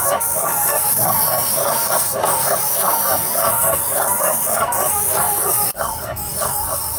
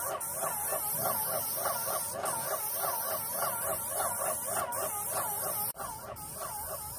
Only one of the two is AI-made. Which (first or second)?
first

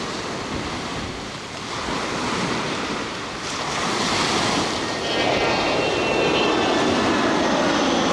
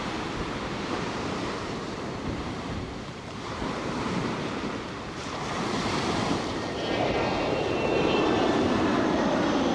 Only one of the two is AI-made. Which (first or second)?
second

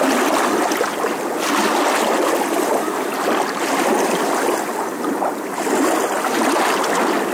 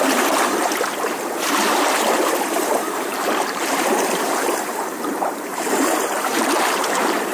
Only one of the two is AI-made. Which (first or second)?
second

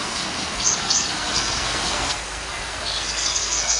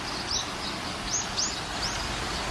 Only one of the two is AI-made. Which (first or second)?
first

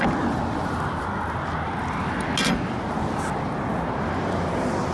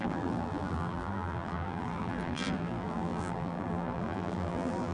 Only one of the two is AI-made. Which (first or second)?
second